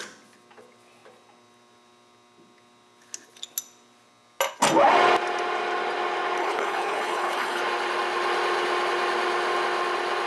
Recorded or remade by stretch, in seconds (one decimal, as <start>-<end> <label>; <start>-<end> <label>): 0.0-6.4 recorded; 6.4-7.6 remade; 7.6-10.3 recorded